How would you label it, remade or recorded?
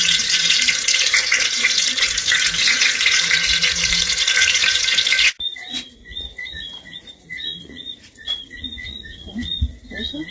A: remade